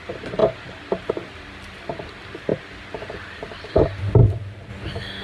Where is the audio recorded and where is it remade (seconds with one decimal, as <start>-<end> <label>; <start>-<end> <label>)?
0.0-0.4 recorded; 0.4-1.1 remade; 1.1-4.2 recorded; 4.2-4.7 remade; 4.7-5.2 recorded